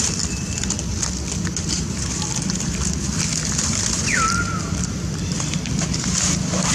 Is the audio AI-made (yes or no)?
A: yes